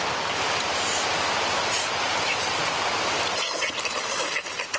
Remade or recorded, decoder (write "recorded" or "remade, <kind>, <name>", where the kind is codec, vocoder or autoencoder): recorded